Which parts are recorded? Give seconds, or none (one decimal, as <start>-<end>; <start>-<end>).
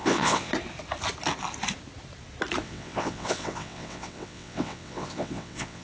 0.5-2.6